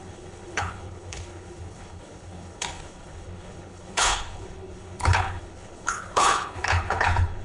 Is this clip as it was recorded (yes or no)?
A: no